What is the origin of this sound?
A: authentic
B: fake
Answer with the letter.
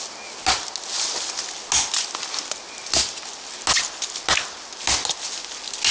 A